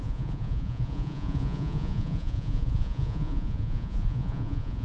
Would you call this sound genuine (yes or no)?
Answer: no